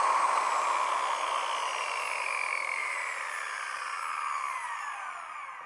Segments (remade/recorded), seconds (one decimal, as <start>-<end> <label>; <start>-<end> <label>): 0.0-2.8 recorded; 2.8-3.7 remade; 3.7-5.7 recorded